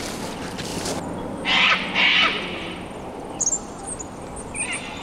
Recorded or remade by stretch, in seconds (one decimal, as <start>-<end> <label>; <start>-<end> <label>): 0.0-5.0 recorded